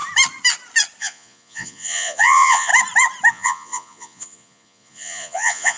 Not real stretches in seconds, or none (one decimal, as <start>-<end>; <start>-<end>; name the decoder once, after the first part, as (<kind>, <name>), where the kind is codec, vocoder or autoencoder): 1.0-2.7 (vocoder, Vocos); 3.3-5.8